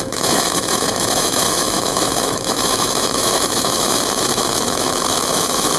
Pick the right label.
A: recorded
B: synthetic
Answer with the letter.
B